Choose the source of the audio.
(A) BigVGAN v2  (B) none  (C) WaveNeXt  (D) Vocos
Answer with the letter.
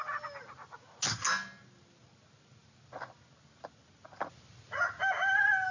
B